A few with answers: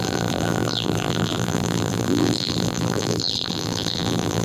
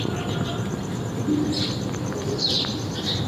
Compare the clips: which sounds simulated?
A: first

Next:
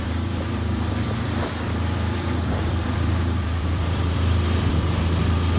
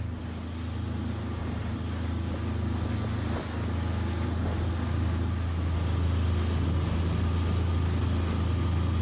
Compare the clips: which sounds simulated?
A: first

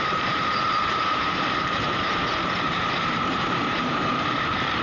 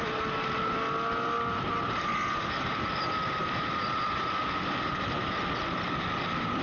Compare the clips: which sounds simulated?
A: first